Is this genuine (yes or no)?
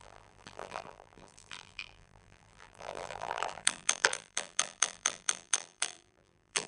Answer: no